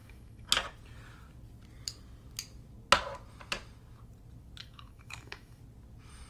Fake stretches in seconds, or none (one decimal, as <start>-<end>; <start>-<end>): 0.0-0.5; 4.6-5.6